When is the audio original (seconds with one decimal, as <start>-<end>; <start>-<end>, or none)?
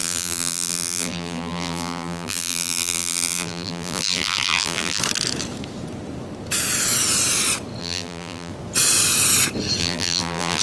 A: 5.0-7.8; 8.5-9.8